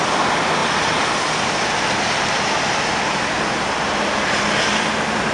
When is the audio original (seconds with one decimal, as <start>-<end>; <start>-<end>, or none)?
0.0-5.3